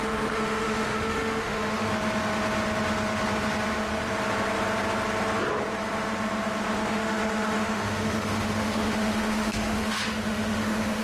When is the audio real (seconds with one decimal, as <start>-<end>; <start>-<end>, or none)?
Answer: 1.9-6.9